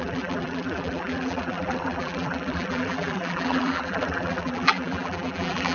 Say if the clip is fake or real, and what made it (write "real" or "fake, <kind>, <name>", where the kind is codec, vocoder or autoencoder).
fake, vocoder, BigVGAN v2